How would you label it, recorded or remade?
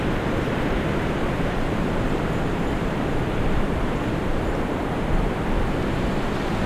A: remade